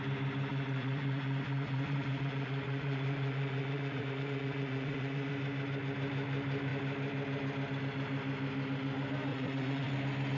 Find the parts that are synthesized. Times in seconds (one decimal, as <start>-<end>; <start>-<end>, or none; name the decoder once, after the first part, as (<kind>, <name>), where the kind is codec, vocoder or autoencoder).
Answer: 0.5-5.3 (vocoder, Vocos); 9.3-9.9